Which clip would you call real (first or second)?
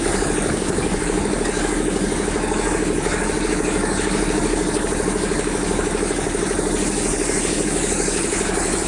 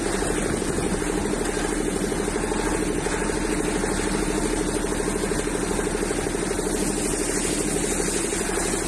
second